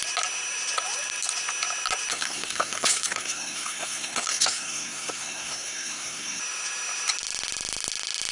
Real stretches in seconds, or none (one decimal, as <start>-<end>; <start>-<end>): 0.0-2.1; 6.4-8.3